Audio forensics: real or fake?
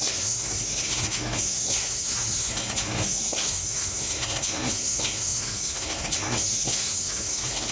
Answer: fake